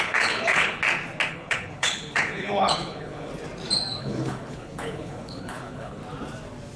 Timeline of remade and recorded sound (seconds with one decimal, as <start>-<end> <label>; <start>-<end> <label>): 0.0-0.8 remade; 0.8-1.3 recorded; 1.3-3.3 remade; 3.3-4.0 recorded; 4.0-6.0 remade; 6.0-6.8 recorded